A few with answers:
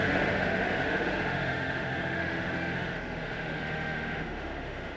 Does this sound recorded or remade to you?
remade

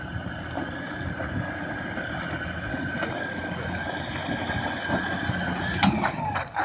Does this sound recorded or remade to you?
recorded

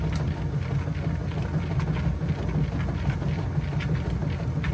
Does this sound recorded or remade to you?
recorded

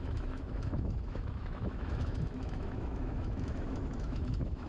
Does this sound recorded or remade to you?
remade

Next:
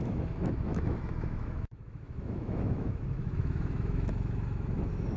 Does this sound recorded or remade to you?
remade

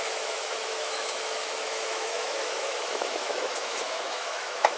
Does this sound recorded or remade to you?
remade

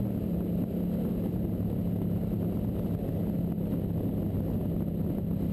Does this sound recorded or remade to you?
recorded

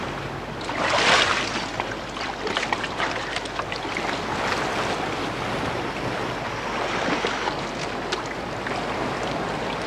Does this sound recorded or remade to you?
recorded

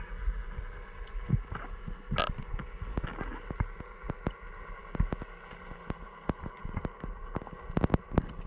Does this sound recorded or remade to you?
recorded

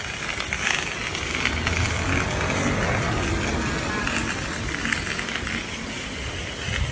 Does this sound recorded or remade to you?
recorded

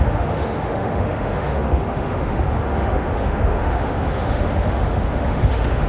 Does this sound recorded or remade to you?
remade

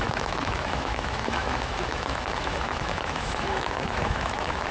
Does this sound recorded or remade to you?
remade